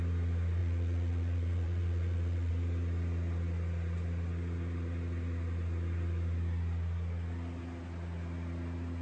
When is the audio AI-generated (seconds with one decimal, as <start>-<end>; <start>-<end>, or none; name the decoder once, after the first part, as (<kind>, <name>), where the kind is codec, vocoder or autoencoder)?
0.6-2.5 (vocoder, Vocos)